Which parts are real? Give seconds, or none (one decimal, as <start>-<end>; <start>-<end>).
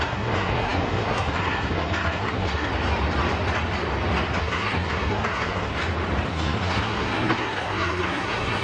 2.7-4.4; 5.7-6.3